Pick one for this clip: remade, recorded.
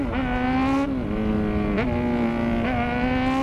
recorded